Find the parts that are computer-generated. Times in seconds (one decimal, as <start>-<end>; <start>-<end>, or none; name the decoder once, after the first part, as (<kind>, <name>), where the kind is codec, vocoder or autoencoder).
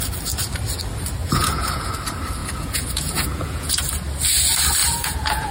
1.2-1.9 (vocoder, Vocos); 2.4-3.8; 4.8-5.5